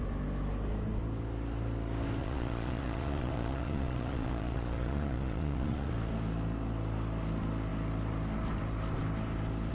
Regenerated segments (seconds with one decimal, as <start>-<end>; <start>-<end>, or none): 2.2-5.9